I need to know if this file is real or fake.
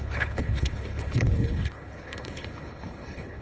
fake